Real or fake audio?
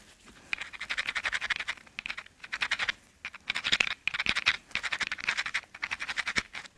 real